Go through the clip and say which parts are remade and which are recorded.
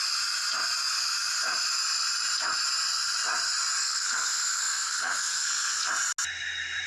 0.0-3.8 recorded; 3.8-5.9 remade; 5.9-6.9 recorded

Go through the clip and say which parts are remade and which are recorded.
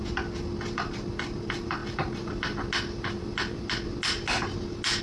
0.0-5.0 recorded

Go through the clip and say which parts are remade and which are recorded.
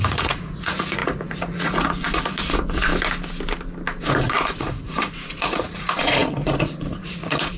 0.0-2.9 remade; 2.9-4.0 recorded; 4.0-7.6 remade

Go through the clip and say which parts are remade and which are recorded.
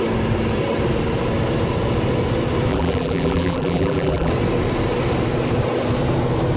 0.0-2.7 recorded; 2.7-4.3 remade; 4.3-6.6 recorded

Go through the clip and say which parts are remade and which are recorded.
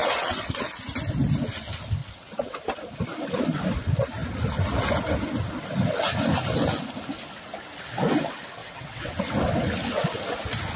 0.0-0.8 remade; 0.8-2.0 recorded; 2.0-2.6 remade; 2.6-8.6 recorded; 8.6-9.2 remade; 9.2-10.8 recorded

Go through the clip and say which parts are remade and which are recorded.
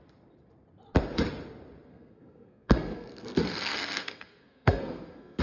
0.0-1.9 recorded; 1.9-5.4 remade